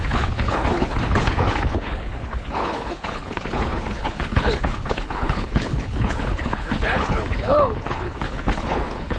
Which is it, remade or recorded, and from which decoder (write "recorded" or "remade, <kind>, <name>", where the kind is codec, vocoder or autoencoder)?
remade, codec, HILCodec